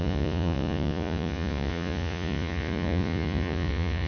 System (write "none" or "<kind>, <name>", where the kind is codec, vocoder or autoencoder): vocoder, Vocos